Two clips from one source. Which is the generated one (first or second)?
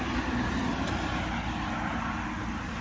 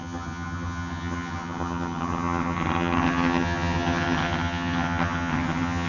second